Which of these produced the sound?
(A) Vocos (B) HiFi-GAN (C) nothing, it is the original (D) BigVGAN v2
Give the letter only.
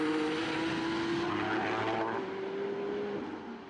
C